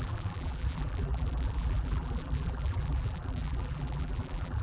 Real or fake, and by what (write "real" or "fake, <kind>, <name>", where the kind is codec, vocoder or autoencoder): fake, vocoder, BigVGAN v2